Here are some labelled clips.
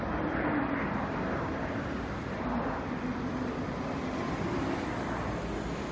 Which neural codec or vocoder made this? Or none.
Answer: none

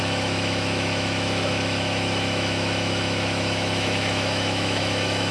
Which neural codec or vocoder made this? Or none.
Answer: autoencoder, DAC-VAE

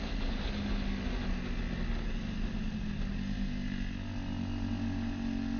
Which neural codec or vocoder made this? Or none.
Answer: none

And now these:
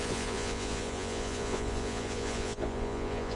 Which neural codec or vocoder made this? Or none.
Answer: vocoder, Vocos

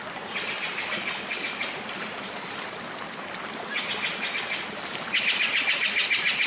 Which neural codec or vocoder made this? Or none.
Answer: none